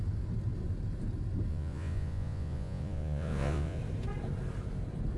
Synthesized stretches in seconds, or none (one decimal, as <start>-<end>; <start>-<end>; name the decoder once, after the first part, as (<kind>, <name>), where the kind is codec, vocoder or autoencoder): 1.5-3.8 (vocoder, Vocos)